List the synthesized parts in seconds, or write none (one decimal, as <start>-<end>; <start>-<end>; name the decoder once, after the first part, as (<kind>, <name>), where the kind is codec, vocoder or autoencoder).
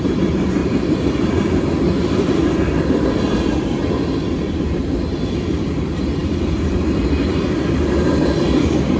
0.6-3.1 (vocoder, BigVGAN v2); 6.2-7.0